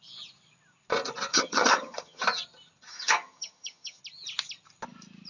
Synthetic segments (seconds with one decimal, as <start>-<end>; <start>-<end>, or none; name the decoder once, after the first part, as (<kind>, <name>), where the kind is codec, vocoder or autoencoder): 1.3-2.2 (vocoder, HiFi-GAN); 2.9-4.0